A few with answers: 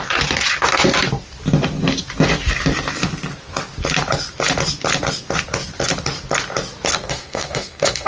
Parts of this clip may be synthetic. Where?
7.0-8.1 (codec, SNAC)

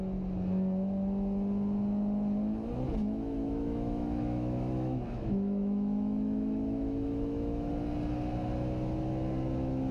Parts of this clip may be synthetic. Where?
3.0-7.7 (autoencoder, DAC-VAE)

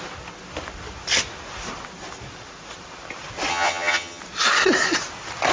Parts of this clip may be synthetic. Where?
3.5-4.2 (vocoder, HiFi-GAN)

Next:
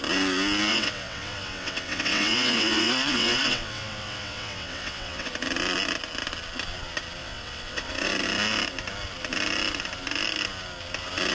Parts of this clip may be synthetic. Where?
0.7-5.3 (vocoder, WaveNeXt); 7.2-7.9

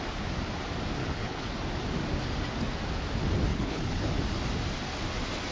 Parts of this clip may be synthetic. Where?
1.0-1.5 (codec, HILCodec); 3.5-4.1